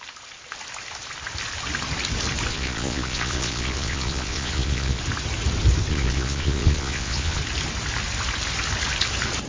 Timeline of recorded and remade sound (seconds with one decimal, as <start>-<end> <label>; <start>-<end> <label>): 0.0-2.5 recorded; 2.5-5.0 remade; 5.0-5.9 recorded; 5.9-7.4 remade; 7.4-9.5 recorded